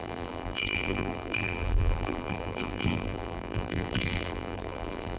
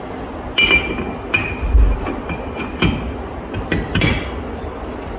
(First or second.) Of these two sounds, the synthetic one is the first